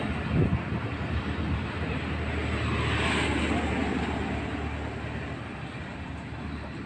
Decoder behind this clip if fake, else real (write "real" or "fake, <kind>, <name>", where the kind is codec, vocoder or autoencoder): real